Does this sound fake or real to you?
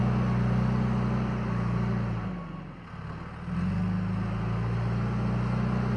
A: real